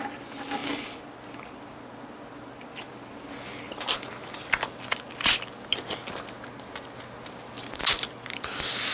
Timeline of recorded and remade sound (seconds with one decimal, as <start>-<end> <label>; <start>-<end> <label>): 0.0-8.9 recorded